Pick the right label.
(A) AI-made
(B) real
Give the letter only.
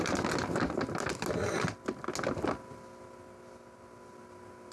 B